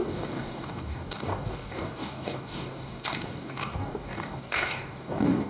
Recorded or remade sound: remade